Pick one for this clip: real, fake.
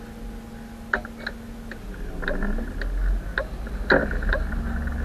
real